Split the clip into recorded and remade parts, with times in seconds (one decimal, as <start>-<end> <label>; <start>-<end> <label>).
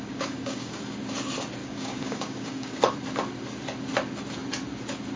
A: 0.0-0.8 remade; 0.8-1.6 recorded; 1.6-2.8 remade; 2.8-5.2 recorded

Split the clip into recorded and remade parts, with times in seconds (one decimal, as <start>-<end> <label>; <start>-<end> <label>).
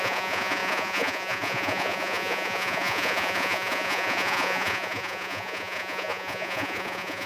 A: 0.0-7.3 remade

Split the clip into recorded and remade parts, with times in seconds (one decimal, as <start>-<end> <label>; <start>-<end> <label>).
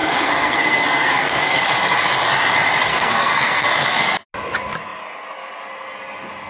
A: 0.0-1.6 remade; 1.6-2.9 recorded; 2.9-4.0 remade; 4.0-6.5 recorded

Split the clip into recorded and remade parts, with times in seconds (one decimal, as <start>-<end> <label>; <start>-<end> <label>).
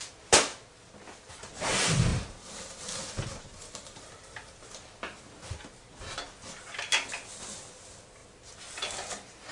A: 0.0-2.1 recorded; 2.1-4.7 remade; 4.7-9.5 recorded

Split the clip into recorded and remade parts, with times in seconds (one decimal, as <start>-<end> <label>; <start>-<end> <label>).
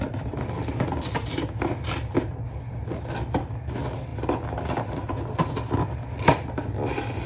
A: 0.0-7.3 recorded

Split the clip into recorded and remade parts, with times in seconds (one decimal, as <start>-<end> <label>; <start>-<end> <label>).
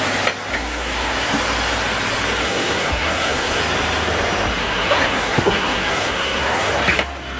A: 0.0-0.5 recorded; 0.5-1.3 remade; 1.3-2.4 recorded; 2.4-3.6 remade; 3.6-4.6 recorded; 4.6-6.7 remade; 6.7-7.4 recorded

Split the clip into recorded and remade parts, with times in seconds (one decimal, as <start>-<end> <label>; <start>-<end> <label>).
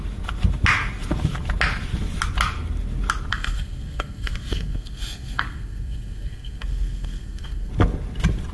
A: 0.0-3.3 recorded; 3.3-7.7 remade; 7.7-8.5 recorded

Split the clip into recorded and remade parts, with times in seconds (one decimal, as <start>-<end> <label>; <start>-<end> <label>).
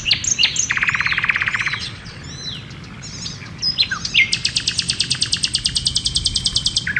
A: 0.0-1.5 recorded; 1.5-2.2 remade; 2.2-7.0 recorded